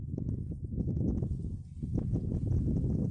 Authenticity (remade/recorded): recorded